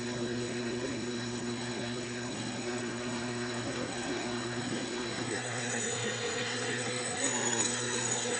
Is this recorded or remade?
remade